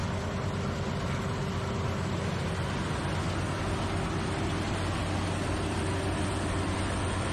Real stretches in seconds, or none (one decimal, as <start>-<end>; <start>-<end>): 0.0-7.3